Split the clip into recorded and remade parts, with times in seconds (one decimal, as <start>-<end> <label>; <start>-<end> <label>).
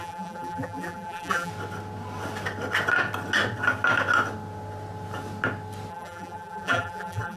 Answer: 0.0-1.5 remade; 1.5-5.9 recorded; 5.9-7.4 remade